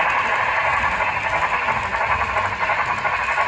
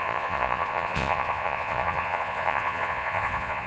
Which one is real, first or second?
first